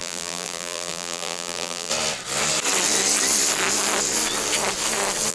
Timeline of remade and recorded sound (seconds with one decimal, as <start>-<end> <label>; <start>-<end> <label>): 0.0-1.9 remade; 1.9-5.3 recorded